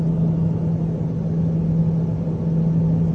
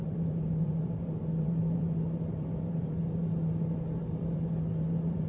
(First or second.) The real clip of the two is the first